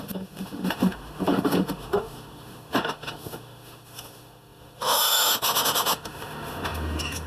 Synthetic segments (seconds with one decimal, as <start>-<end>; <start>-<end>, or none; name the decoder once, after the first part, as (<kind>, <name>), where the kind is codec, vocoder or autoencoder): 0.0-7.3 (autoencoder, DAC-VAE)